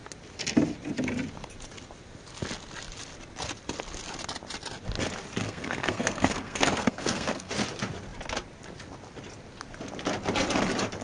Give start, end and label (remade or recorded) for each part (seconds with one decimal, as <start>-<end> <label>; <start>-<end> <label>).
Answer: 0.0-5.4 recorded; 5.4-7.5 remade; 7.5-11.0 recorded